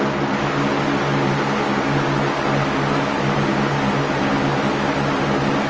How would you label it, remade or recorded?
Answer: recorded